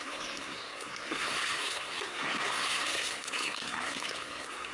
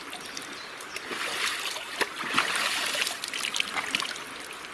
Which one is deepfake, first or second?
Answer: first